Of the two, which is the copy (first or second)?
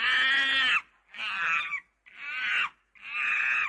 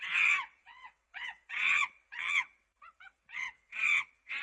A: second